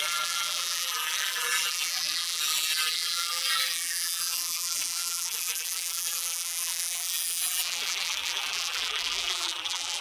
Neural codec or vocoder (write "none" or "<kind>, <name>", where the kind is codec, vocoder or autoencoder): vocoder, BigVGAN v2